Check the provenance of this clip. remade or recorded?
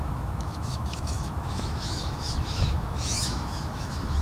remade